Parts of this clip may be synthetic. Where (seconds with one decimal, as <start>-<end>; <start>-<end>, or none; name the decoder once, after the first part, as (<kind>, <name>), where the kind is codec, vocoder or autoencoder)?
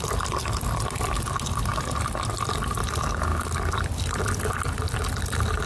none